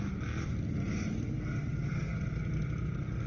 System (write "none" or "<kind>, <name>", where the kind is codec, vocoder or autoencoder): none